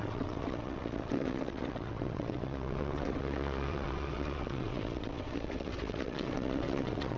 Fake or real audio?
fake